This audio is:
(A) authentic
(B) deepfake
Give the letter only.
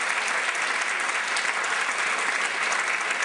A